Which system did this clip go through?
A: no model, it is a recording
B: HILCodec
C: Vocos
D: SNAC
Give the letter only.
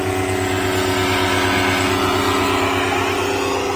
A